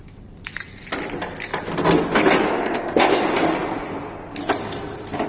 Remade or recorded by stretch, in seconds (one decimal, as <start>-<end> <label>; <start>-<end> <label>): 0.0-2.5 recorded; 2.5-3.2 remade; 3.2-5.3 recorded